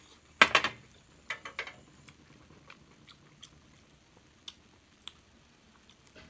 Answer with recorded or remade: recorded